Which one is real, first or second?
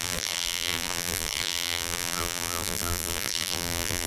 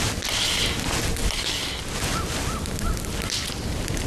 second